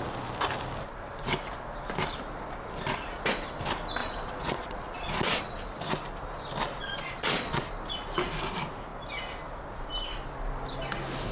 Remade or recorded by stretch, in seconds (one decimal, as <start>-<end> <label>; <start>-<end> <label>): 0.0-4.0 recorded; 4.0-5.4 remade; 5.4-6.8 recorded; 6.8-7.7 remade; 7.7-11.3 recorded